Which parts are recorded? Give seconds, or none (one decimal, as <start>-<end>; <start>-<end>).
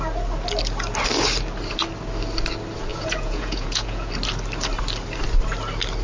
0.0-2.9; 4.1-6.0